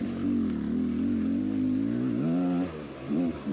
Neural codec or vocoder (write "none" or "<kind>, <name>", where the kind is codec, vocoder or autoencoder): none